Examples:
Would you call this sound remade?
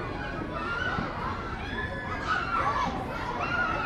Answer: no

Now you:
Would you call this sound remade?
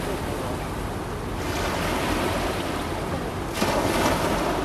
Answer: no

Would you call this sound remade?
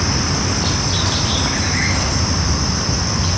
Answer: no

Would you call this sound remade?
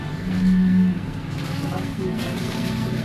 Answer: yes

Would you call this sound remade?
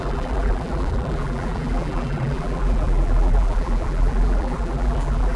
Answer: yes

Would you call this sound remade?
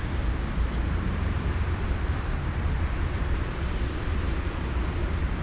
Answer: yes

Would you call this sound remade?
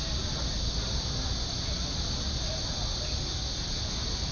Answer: no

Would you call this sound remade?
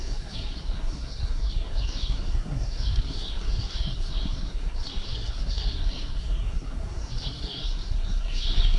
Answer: yes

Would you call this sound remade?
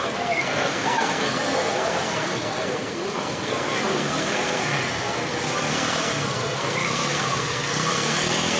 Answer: yes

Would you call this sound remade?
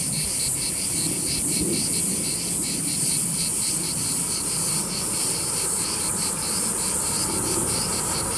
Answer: yes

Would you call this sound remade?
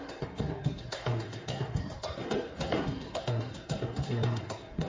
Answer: yes